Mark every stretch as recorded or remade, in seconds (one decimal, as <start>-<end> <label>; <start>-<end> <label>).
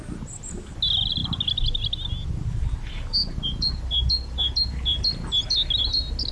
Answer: 0.0-6.3 recorded